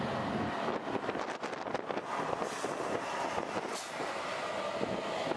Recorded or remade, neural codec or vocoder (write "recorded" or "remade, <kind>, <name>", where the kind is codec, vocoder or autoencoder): recorded